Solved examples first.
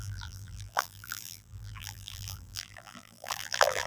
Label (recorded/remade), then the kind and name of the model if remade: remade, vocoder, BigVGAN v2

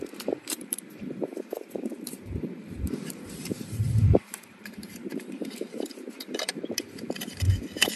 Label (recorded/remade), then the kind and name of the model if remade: remade, vocoder, BigVGAN v2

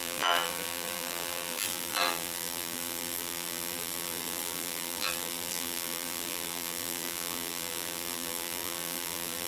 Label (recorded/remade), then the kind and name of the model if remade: remade, vocoder, BigVGAN v2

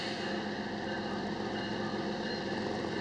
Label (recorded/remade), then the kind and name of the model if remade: recorded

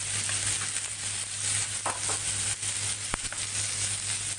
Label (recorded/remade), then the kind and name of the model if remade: recorded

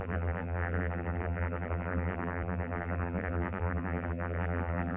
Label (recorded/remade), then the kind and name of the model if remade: remade, vocoder, BigVGAN v2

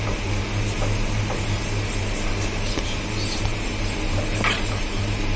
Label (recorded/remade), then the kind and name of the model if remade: remade, vocoder, BigVGAN v2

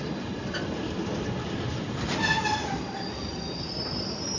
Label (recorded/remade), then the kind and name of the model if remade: recorded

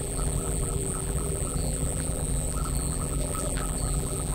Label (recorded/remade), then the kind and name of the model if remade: remade, vocoder, BigVGAN v2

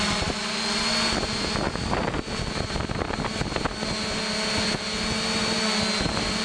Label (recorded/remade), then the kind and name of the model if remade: recorded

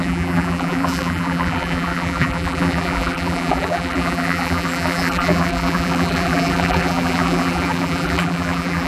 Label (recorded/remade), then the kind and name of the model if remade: remade, vocoder, BigVGAN v2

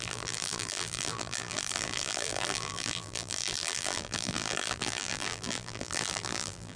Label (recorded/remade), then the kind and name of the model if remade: remade, vocoder, BigVGAN v2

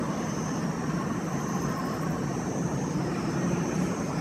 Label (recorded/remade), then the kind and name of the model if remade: remade, vocoder, BigVGAN v2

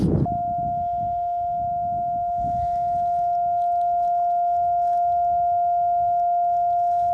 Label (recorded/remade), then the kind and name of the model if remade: recorded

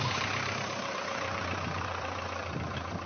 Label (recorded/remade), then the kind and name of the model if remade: remade, vocoder, BigVGAN v2